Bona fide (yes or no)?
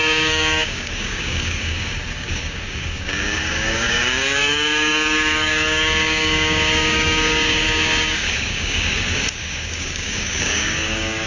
no